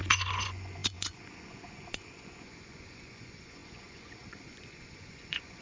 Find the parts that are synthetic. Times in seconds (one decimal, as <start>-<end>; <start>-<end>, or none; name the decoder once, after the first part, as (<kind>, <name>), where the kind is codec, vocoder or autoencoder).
0.0-5.6 (vocoder, Vocos)